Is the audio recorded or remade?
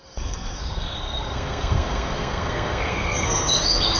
remade